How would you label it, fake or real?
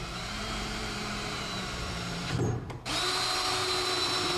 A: fake